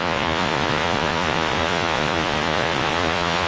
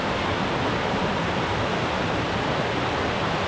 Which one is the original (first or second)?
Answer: second